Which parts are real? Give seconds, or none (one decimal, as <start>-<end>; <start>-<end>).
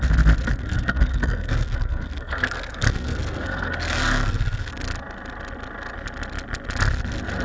0.0-0.6; 4.7-7.4